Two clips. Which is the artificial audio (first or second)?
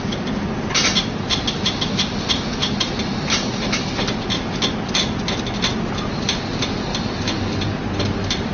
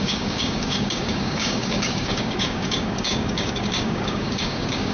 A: second